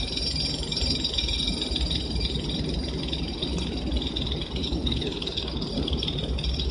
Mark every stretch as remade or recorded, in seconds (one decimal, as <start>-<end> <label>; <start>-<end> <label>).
0.0-4.6 recorded; 4.6-5.5 remade; 5.5-6.7 recorded